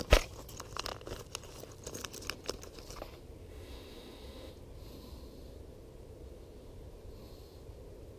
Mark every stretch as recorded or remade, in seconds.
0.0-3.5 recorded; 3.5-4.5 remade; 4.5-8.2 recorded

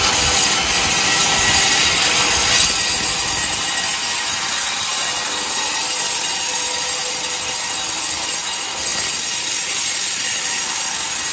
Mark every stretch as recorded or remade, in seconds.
0.0-11.3 recorded

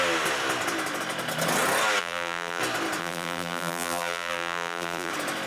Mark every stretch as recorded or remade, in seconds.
0.0-2.0 recorded; 2.0-2.6 remade; 2.6-3.0 recorded; 3.0-5.1 remade; 5.1-5.5 recorded

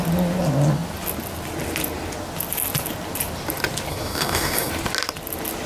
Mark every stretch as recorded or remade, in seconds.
0.0-3.9 recorded; 3.9-4.7 remade; 4.7-5.7 recorded

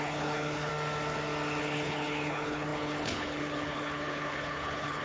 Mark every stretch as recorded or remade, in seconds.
0.0-0.7 remade; 0.7-1.6 recorded; 1.6-5.0 remade

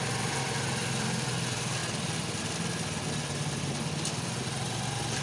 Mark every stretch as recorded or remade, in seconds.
0.0-5.2 recorded

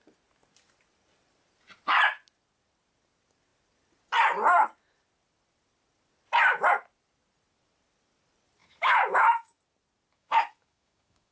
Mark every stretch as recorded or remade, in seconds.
0.0-8.6 recorded; 8.6-9.6 remade; 9.6-10.1 recorded; 10.1-11.3 remade